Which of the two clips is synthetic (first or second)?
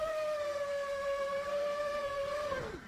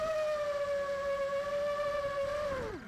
first